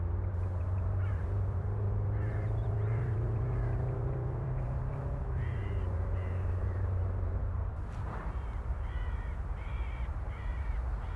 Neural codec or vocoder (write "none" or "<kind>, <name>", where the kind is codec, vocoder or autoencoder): vocoder, BigVGAN v2